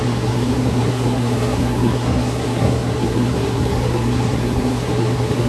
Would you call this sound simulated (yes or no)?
yes